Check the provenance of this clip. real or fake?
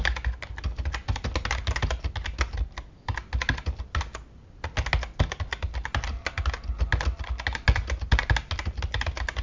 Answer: real